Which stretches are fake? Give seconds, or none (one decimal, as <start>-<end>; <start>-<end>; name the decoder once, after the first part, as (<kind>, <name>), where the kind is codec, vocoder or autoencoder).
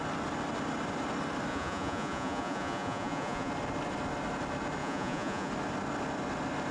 1.5-3.5 (vocoder, Vocos); 4.8-5.5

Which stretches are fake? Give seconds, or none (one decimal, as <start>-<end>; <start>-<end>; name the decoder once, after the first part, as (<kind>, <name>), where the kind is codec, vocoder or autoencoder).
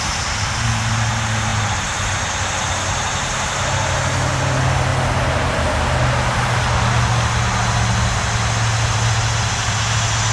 none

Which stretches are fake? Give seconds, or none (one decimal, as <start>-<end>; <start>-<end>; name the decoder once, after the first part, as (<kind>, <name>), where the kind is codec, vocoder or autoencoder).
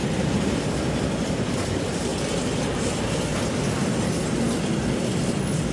none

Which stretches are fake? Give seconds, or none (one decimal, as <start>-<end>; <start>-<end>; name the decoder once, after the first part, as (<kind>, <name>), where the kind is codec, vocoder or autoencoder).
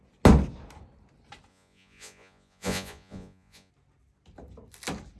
1.5-3.7 (vocoder, Vocos)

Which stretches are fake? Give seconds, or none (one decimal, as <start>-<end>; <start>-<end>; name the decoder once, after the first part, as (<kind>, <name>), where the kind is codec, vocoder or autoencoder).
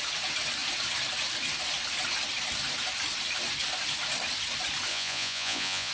4.9-5.9 (vocoder, Vocos)